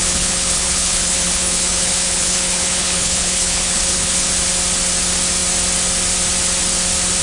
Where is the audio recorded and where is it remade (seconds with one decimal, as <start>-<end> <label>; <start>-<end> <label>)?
0.0-4.3 remade; 4.3-7.2 recorded